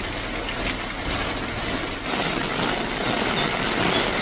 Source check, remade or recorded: recorded